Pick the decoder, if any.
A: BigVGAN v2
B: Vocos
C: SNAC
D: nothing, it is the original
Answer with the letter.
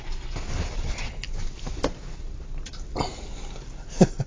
D